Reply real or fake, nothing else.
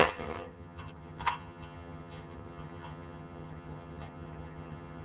fake